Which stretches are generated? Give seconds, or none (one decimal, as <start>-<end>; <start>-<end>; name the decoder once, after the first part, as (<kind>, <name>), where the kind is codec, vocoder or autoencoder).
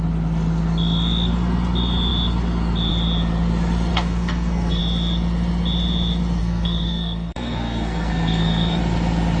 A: 3.9-4.8 (codec, SNAC); 6.4-8.8